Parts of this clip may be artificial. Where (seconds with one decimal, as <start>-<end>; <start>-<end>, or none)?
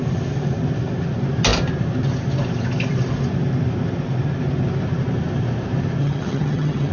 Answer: 6.0-6.9